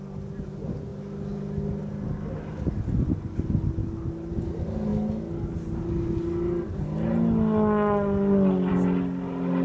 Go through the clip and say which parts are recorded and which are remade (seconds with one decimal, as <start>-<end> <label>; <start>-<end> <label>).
0.0-9.6 recorded